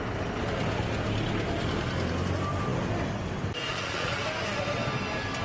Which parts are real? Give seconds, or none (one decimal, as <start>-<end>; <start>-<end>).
0.0-3.7; 4.2-5.4